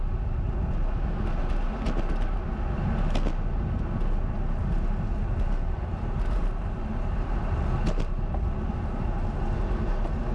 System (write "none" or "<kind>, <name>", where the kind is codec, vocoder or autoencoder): none